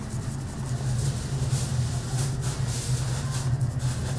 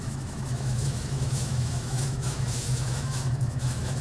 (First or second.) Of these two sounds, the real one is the first